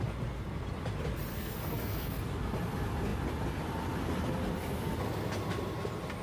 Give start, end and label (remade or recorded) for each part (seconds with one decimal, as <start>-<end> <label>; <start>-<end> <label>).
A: 0.0-1.3 recorded; 1.3-2.2 remade; 2.2-6.2 recorded